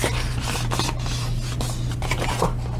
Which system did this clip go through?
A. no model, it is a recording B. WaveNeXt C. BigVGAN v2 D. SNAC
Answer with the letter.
A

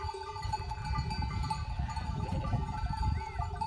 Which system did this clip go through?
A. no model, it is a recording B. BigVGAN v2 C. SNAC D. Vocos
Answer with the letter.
B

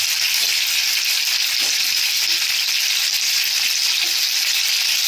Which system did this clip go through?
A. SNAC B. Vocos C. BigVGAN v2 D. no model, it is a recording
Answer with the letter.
D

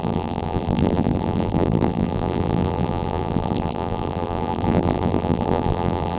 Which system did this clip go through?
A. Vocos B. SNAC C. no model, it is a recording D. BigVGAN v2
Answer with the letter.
D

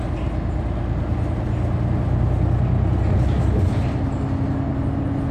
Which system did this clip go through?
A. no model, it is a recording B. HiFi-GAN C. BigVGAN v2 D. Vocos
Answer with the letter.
A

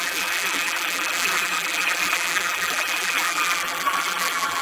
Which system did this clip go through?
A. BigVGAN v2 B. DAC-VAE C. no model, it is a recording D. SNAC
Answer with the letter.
A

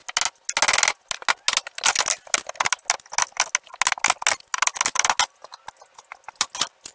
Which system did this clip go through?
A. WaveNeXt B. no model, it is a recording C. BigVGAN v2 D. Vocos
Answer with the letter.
B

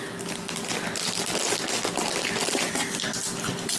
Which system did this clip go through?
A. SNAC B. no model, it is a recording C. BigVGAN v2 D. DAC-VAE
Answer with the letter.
B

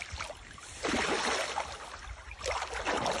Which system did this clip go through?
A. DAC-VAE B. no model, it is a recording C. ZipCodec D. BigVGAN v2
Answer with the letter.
B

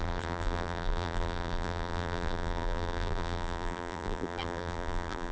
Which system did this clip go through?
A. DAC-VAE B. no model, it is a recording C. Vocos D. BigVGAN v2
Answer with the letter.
D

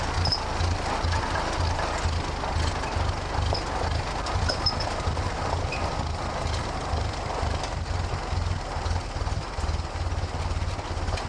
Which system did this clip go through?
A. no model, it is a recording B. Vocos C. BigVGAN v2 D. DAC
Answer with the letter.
A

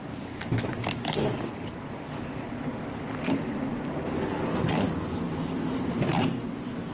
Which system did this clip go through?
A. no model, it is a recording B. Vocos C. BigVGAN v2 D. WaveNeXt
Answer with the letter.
A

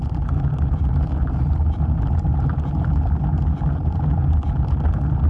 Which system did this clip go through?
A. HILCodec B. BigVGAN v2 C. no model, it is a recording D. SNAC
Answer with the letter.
C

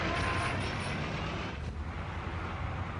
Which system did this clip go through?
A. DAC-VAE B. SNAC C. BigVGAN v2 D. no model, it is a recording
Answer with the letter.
D